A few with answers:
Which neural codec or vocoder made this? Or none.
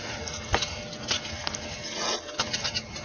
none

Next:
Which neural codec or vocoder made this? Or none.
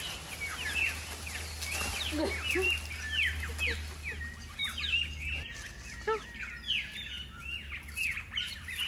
none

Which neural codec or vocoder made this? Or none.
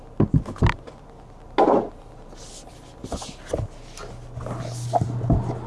none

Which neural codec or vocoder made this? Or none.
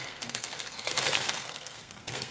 codec, SNAC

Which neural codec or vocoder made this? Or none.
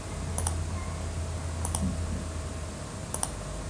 none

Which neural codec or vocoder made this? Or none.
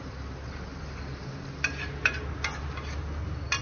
none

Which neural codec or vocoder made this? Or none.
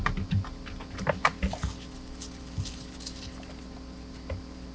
none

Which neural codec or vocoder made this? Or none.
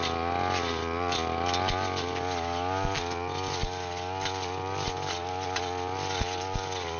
none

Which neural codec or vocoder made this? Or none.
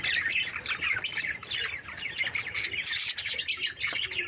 none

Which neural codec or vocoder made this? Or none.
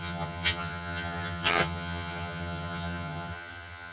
vocoder, HiFi-GAN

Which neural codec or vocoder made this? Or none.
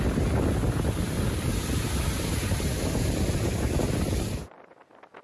none